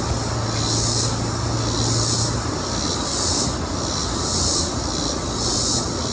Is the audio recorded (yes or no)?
yes